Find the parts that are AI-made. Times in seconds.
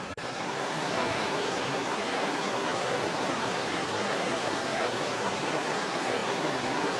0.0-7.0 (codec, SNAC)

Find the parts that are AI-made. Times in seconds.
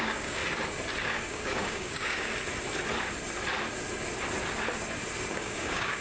0.0-0.4 (codec, DAC); 1.0-2.3; 5.3-6.0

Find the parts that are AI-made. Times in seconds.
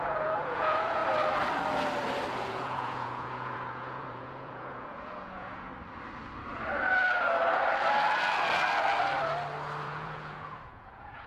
0.0-1.0 (vocoder, Vocos); 2.3-5.7; 9.8-11.3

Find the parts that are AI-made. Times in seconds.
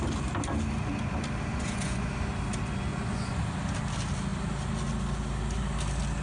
1.5-2.1 (vocoder, Vocos); 2.9-3.4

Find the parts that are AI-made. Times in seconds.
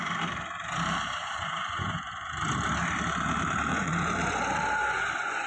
1.2-2.3 (vocoder, Vocos); 3.7-5.5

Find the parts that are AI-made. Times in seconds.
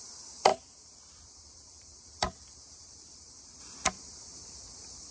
0.5-3.6 (vocoder, BigVGAN v2)